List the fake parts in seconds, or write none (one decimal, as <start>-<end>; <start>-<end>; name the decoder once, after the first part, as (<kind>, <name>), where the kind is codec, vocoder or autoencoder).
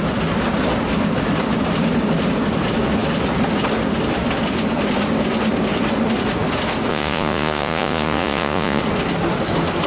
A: 6.9-8.8 (vocoder, Vocos)